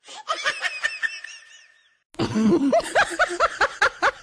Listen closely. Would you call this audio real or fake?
real